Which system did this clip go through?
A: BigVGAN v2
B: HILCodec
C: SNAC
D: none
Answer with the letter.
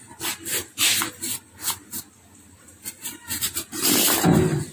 D